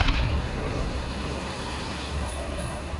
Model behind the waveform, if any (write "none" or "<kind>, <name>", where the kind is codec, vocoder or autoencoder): codec, SNAC